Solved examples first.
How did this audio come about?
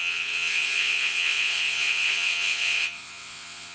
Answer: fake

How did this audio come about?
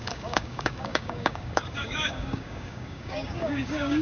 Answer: fake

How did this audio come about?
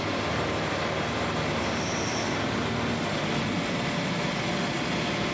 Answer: real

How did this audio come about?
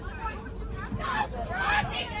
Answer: real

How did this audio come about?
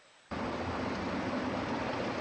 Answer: real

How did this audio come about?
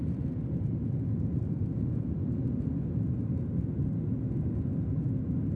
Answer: real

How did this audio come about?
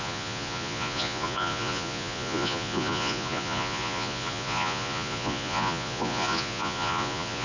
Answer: fake